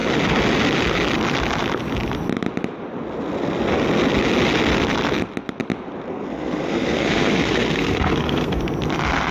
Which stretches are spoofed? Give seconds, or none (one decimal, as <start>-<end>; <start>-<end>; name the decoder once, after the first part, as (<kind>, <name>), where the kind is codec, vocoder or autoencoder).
6.1-8.6 (codec, SNAC)